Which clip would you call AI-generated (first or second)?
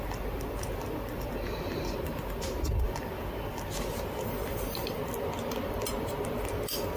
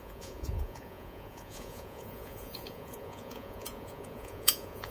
second